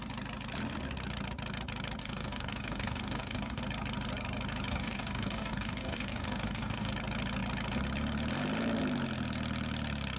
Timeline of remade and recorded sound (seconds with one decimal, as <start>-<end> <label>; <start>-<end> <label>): 0.0-2.0 recorded; 2.0-3.6 remade; 3.6-4.7 recorded; 4.7-6.9 remade; 6.9-10.2 recorded

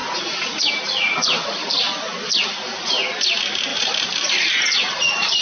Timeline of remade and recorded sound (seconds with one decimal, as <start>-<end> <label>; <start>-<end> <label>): 0.0-0.7 remade; 0.7-3.7 recorded; 3.7-4.5 remade; 4.5-5.4 recorded

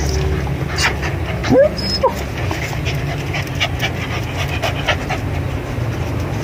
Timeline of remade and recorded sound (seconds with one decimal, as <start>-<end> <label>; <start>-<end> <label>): 0.0-6.4 recorded

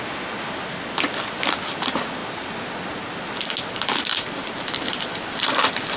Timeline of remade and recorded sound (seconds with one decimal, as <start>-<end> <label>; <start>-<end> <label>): 0.0-4.1 recorded; 4.1-6.0 remade